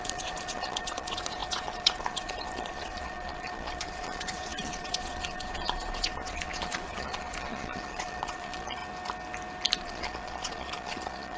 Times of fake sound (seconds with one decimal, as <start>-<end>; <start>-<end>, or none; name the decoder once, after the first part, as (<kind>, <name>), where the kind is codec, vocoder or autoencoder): 0.0-8.8 (vocoder, Vocos); 9.8-11.4